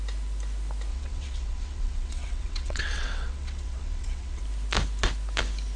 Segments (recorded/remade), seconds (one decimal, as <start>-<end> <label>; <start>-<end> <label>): 0.0-0.9 recorded; 0.9-4.4 remade; 4.4-5.8 recorded